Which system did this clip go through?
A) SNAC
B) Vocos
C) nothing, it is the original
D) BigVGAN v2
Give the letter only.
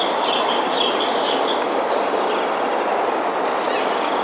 C